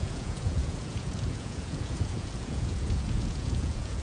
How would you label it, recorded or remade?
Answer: remade